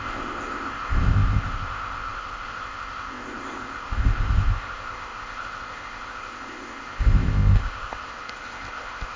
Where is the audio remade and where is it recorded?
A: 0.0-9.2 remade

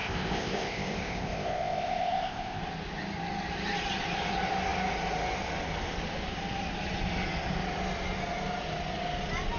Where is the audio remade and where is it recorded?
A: 0.0-2.6 remade; 2.6-9.6 recorded

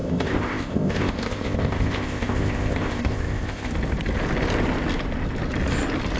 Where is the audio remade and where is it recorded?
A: 0.0-3.7 remade; 3.7-6.2 recorded

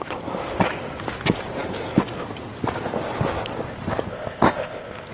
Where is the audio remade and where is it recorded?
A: 0.0-4.1 recorded; 4.1-5.1 remade

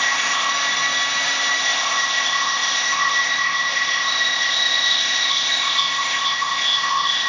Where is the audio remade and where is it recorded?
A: 0.0-0.5 remade; 0.5-1.6 recorded; 1.6-7.3 remade